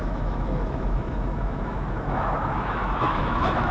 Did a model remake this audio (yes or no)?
yes